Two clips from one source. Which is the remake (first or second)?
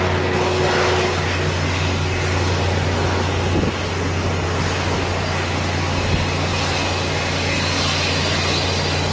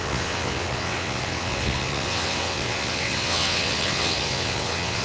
second